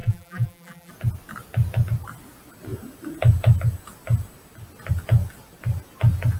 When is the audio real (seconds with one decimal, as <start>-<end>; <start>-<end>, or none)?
0.9-6.4